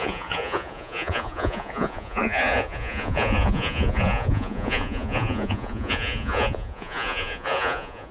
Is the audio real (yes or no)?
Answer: no